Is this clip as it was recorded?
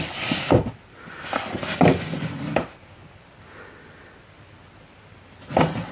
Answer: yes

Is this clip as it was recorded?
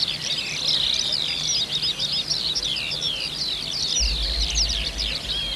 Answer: yes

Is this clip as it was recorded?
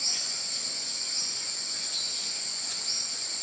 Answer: no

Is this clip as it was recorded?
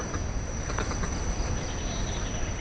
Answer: yes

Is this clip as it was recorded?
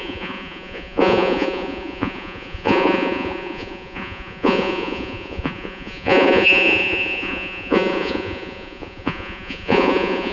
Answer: no